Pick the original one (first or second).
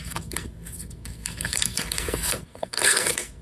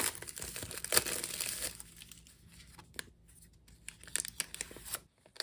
second